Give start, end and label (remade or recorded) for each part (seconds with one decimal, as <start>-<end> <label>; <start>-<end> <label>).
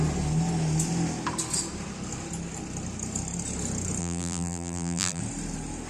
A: 0.0-4.0 recorded; 4.0-5.2 remade; 5.2-5.9 recorded